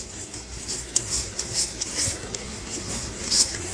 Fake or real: fake